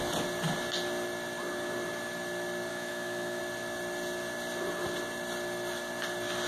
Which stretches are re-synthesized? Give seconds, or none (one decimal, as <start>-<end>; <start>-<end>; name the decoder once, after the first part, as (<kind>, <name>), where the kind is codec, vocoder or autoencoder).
2.7-3.4 (autoencoder, DAC-VAE)